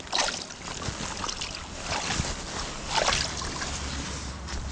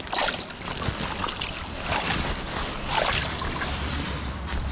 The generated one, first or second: second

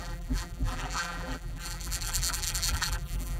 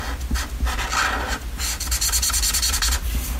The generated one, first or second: first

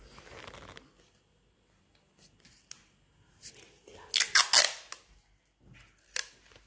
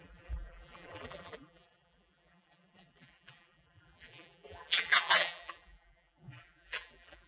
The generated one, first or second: second